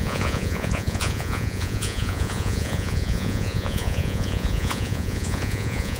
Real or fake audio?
fake